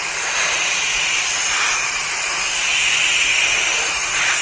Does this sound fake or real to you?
real